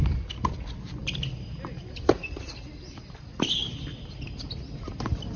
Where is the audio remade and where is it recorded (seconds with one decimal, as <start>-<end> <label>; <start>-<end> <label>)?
0.0-5.4 recorded